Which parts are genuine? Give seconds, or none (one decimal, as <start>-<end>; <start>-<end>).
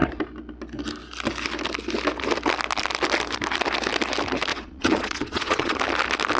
0.0-4.5; 5.8-6.4